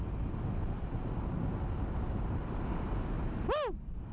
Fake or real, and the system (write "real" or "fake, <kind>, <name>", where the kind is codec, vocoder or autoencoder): real